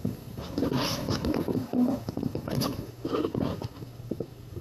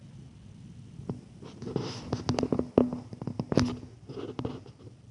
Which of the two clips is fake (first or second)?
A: first